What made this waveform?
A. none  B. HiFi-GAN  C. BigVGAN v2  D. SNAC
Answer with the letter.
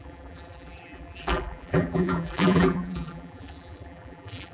C